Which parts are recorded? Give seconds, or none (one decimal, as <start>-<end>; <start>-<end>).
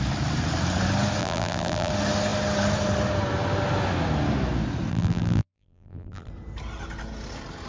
0.0-1.2; 1.9-4.9; 6.3-7.7